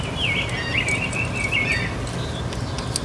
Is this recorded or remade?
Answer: recorded